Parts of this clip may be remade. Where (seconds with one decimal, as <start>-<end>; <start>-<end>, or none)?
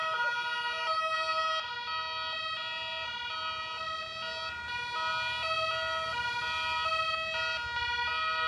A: none